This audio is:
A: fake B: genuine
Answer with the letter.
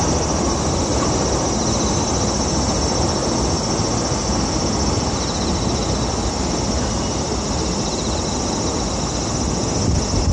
B